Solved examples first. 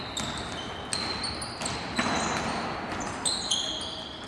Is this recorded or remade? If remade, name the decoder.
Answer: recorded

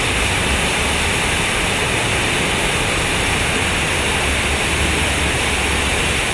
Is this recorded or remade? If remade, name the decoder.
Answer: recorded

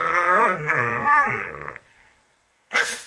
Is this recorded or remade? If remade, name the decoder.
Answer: remade, codec, SNAC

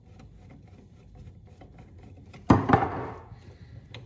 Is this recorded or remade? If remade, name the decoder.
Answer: recorded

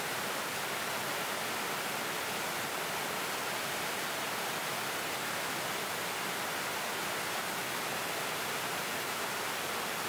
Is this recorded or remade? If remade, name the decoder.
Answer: recorded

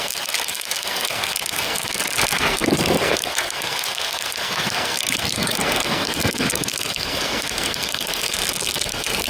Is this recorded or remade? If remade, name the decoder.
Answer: remade, codec, SNAC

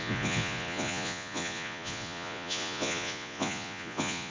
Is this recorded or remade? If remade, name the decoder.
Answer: remade, vocoder, Vocos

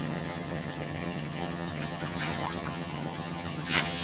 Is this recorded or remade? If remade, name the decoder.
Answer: remade, vocoder, HiFi-GAN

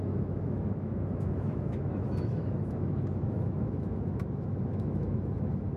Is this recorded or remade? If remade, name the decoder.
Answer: remade, autoencoder, DAC-VAE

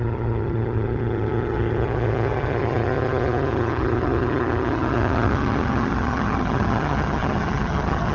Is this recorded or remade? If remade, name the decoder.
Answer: remade, vocoder, HiFi-GAN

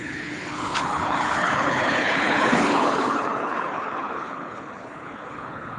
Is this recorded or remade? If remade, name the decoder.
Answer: remade, codec, HILCodec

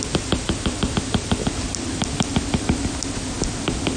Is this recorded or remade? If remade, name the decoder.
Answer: recorded